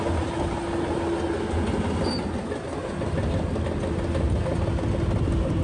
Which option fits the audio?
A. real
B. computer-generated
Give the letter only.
A